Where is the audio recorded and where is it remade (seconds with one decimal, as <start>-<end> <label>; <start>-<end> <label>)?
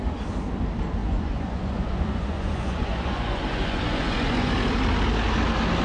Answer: 0.0-1.0 recorded; 1.0-4.5 remade; 4.5-5.8 recorded